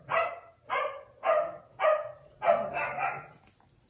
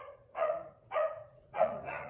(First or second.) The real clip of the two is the first